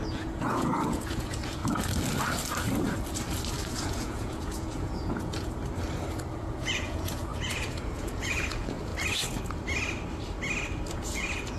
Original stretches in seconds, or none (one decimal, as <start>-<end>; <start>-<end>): 1.6-3.7; 5.6-6.4; 8.9-10.9